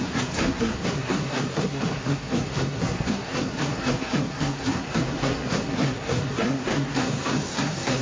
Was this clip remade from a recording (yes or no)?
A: yes